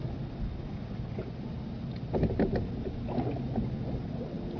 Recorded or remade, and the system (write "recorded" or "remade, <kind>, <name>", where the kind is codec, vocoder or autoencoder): recorded